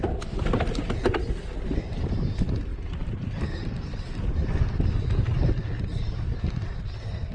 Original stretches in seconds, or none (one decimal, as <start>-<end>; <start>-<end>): 0.0-7.3